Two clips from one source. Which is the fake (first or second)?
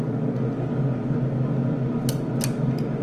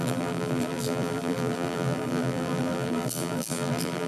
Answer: second